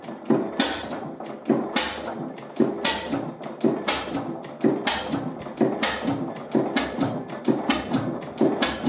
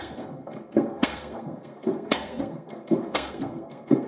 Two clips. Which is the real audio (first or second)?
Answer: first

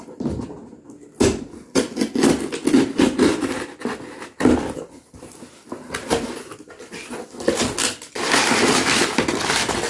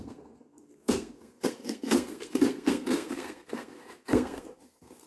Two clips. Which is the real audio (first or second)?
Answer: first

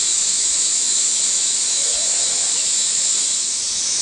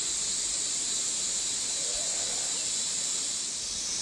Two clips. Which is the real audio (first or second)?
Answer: second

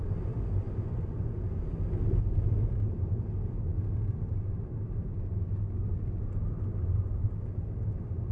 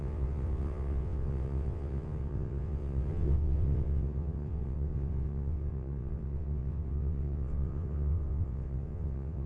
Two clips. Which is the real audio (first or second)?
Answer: first